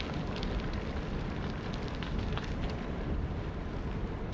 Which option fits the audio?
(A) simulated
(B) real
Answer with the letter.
B